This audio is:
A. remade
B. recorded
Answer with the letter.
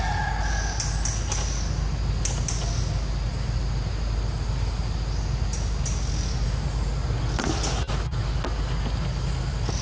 B